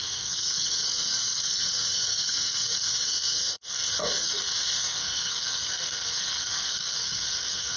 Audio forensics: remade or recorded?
remade